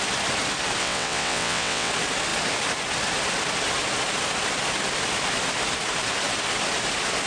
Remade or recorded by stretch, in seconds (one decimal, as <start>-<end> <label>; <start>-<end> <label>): 0.0-0.8 recorded; 0.8-1.9 remade; 1.9-7.3 recorded